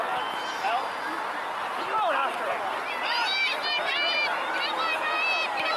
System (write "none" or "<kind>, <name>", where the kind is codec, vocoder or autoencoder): none